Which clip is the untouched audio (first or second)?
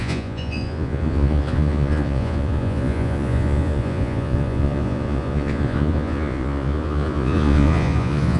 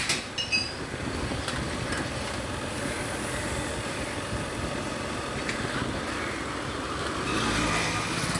second